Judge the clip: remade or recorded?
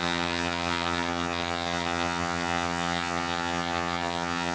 remade